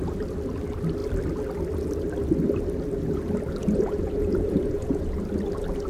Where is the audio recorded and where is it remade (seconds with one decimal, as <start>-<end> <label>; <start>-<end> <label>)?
0.0-3.6 recorded; 3.6-5.2 remade; 5.2-5.9 recorded